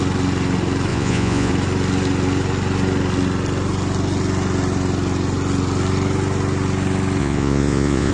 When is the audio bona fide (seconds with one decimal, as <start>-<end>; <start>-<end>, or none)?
0.0-0.9; 1.5-7.2

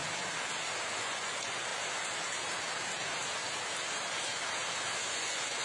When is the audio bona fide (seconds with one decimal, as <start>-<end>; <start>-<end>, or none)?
0.0-1.0; 1.7-5.1

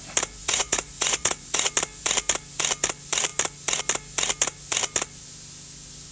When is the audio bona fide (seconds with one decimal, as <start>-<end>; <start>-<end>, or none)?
0.0-0.4; 1.7-6.1